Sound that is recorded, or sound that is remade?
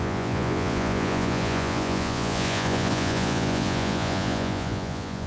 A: remade